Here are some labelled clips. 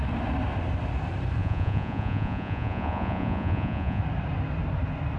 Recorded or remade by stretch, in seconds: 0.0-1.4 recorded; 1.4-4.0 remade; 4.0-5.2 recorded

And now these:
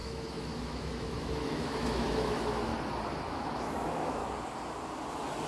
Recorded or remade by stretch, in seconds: 0.0-2.7 remade; 2.7-3.3 recorded; 3.3-4.2 remade; 4.2-5.5 recorded

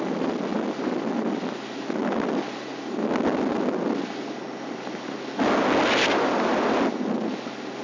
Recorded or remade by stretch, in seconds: 0.0-7.8 recorded

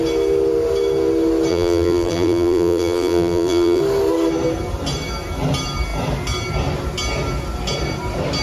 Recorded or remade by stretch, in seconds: 0.0-1.5 recorded; 1.5-3.8 remade; 3.8-8.4 recorded